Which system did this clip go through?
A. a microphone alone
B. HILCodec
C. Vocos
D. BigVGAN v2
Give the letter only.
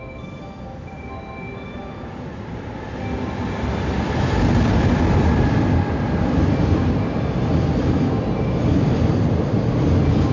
A